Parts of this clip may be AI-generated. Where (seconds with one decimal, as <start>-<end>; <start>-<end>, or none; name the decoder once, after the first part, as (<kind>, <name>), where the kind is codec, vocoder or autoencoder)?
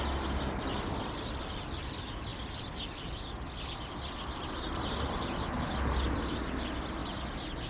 none